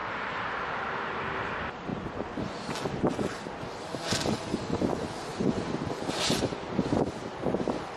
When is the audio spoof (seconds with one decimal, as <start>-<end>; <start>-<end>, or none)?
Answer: 0.0-1.5; 5.3-7.0